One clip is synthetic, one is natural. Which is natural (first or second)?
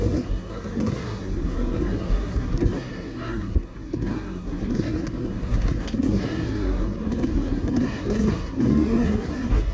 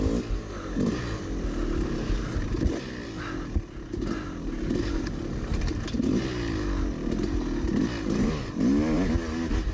second